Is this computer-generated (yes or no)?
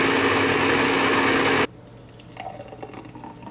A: no